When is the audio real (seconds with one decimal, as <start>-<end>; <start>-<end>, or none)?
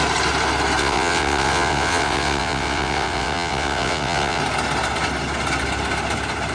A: 0.0-0.8; 4.4-6.5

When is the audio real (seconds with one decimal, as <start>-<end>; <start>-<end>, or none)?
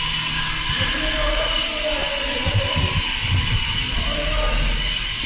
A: 0.0-5.3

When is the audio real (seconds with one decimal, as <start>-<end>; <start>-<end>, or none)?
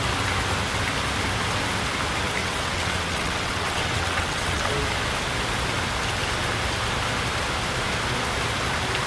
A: 0.0-2.4; 4.7-9.1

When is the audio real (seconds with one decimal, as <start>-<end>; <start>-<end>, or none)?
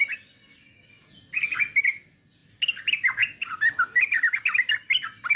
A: 0.0-5.4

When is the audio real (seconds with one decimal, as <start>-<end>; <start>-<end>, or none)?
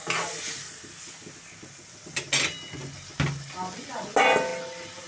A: 0.0-5.1